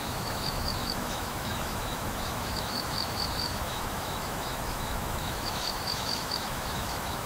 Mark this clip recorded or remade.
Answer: remade